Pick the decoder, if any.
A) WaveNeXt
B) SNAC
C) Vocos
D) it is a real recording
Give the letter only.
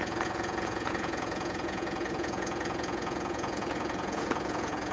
C